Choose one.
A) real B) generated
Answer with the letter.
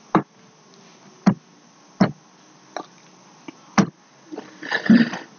A